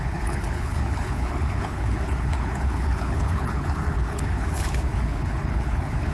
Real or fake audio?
fake